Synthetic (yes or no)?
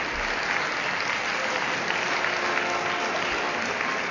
no